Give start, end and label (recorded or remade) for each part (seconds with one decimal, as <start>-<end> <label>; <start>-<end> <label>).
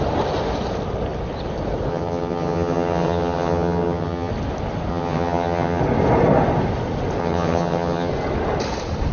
0.0-1.9 recorded; 1.9-4.3 remade; 4.3-4.9 recorded; 4.9-5.8 remade; 5.8-7.2 recorded; 7.2-8.1 remade; 8.1-9.1 recorded